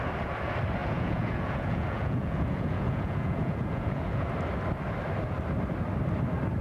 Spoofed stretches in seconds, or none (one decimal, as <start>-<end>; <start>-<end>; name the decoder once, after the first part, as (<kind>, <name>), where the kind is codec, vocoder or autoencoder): 0.8-4.3 (vocoder, Vocos)

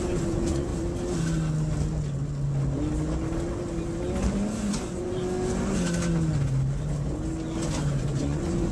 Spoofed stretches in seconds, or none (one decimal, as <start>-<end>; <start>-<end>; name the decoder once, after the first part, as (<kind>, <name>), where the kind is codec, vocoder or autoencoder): 0.0-0.7 (vocoder, Vocos); 4.7-5.2; 8.0-8.7

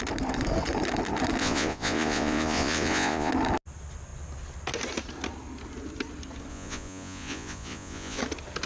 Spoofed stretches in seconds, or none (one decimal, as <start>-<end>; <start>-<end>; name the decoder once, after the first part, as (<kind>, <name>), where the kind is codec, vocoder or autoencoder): 1.4-3.3 (vocoder, Vocos); 6.5-8.2

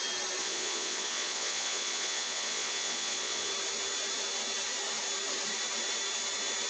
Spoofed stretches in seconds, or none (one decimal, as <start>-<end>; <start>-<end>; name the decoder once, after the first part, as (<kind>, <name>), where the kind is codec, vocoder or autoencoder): 0.4-3.5 (vocoder, Vocos)